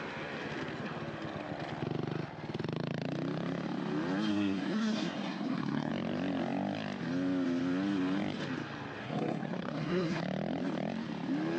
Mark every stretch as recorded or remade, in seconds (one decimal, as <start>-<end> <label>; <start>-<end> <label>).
0.0-4.3 recorded; 4.3-5.9 remade; 5.9-9.0 recorded; 9.0-10.2 remade; 10.2-11.6 recorded